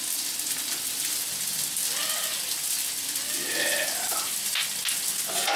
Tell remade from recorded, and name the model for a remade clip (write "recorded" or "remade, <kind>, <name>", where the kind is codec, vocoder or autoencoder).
recorded